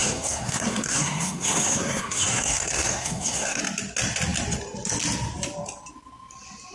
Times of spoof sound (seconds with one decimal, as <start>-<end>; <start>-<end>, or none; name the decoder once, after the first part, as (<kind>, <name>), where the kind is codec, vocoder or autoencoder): 0.0-3.6 (codec, SNAC)